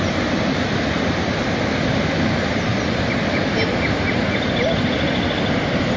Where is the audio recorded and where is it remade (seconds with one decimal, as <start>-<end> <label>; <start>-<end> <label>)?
0.0-6.0 recorded